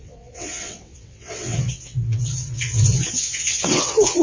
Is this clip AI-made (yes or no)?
yes